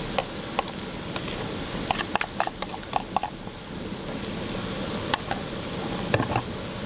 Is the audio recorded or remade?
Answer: recorded